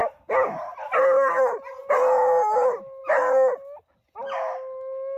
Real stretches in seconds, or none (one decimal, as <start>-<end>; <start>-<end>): 0.0-5.2